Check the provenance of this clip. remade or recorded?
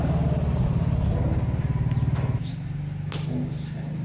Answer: recorded